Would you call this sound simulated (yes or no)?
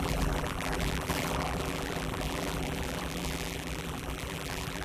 yes